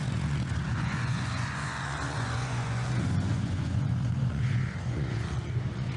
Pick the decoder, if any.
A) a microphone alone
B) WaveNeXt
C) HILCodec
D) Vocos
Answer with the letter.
D